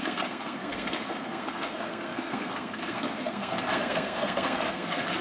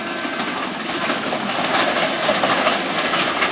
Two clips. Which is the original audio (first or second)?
second